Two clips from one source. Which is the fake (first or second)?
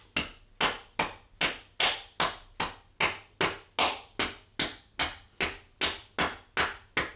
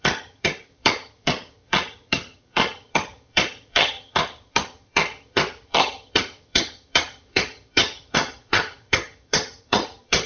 second